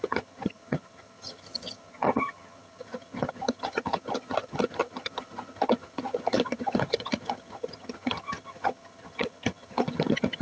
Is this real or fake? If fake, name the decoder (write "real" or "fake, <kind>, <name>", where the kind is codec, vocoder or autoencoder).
fake, vocoder, HiFi-GAN